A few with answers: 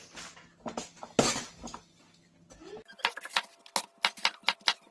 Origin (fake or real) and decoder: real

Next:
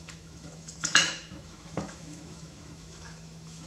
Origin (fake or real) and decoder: fake, autoencoder, DAC-VAE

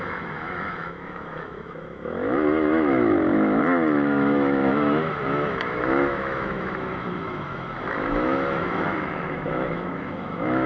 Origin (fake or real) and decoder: fake, autoencoder, DAC-VAE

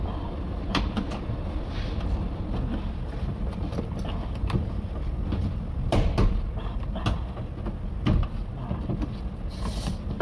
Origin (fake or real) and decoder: real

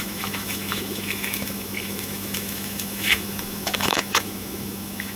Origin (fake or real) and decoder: fake, autoencoder, DAC-VAE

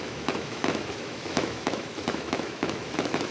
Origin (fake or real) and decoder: fake, autoencoder, DAC-VAE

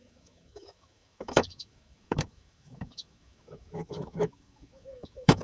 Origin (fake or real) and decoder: fake, autoencoder, DAC-VAE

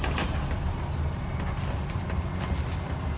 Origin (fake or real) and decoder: real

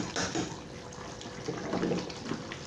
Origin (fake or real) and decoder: real